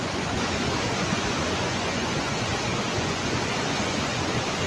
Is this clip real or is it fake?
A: fake